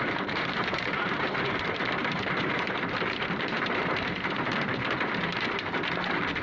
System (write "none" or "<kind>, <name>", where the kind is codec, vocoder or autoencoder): vocoder, BigVGAN v2